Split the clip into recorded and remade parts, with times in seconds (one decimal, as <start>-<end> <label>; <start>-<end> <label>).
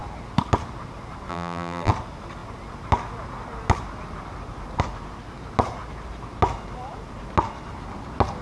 0.0-1.3 recorded; 1.3-1.9 remade; 1.9-8.4 recorded